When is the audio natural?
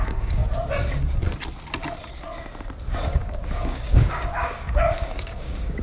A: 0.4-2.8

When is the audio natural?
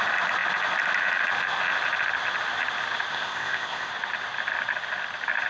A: 0.0-3.1; 3.9-5.5